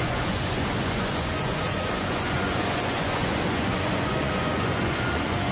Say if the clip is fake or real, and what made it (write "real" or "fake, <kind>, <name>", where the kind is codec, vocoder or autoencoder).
fake, vocoder, Vocos